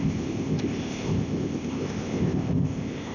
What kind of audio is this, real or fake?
fake